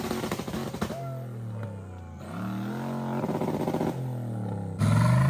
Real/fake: real